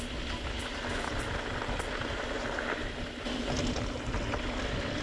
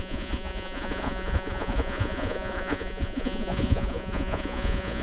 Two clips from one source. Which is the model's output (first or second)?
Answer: second